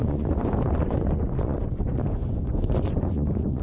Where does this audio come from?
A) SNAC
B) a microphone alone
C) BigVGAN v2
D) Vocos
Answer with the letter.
D